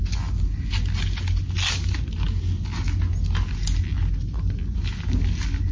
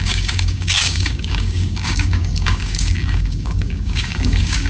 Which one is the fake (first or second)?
second